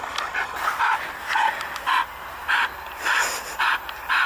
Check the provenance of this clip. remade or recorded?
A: recorded